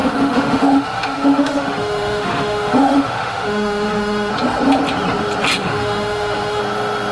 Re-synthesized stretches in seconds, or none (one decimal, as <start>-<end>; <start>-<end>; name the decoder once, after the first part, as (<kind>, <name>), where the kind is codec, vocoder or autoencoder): 0.0-4.3 (autoencoder, DAC-VAE); 5.6-6.6